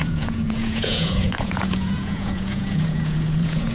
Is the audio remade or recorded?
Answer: remade